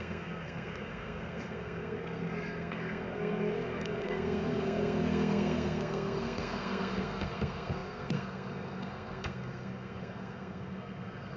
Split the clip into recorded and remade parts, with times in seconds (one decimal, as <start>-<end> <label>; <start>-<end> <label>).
0.0-11.4 remade